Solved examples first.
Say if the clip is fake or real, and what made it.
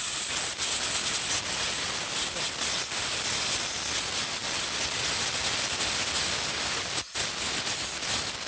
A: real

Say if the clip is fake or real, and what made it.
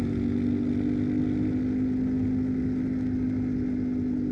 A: real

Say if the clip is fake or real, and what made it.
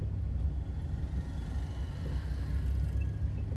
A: real